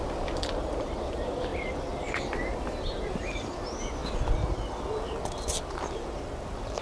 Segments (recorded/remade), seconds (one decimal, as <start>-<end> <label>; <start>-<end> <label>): 0.0-6.8 recorded